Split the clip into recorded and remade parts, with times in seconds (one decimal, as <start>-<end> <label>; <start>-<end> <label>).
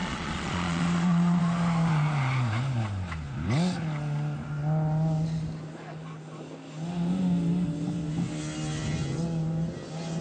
0.0-1.4 remade; 1.4-10.2 recorded